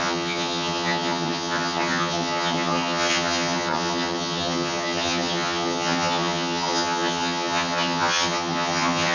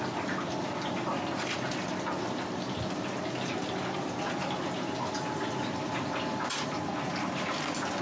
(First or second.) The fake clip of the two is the first